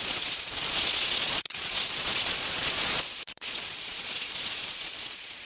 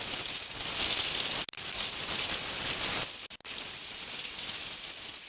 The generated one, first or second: first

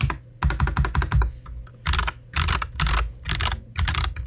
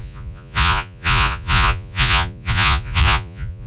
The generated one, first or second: second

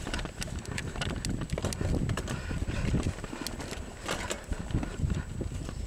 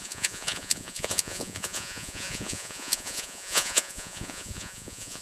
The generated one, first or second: second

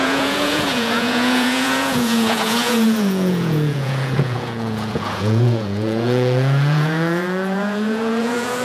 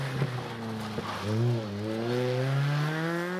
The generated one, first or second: first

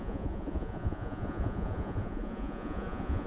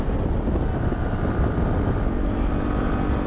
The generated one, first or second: first